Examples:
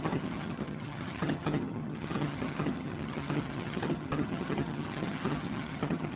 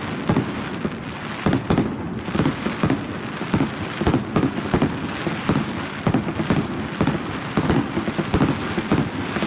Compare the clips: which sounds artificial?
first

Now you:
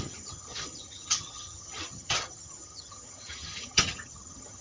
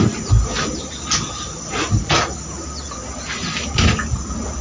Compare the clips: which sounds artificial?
first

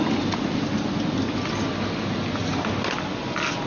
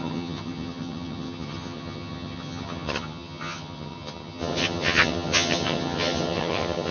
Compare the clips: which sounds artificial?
second